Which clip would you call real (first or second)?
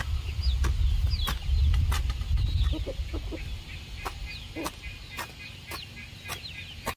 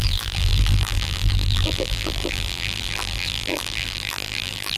first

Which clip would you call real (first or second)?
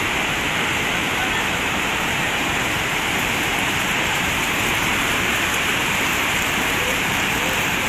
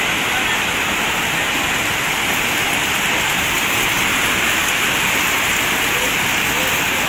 second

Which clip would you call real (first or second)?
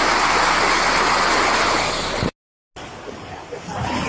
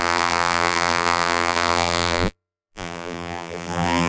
first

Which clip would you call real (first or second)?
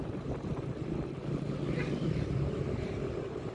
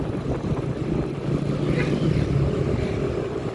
second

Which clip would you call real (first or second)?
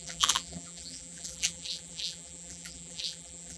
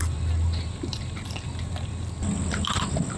second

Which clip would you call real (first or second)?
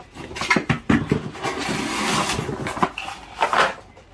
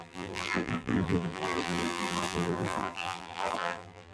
first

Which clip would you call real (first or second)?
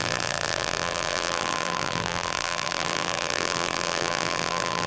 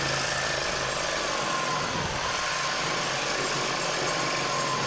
second